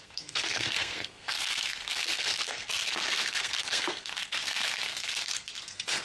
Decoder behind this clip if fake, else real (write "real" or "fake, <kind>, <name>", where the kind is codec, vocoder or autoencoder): fake, codec, SNAC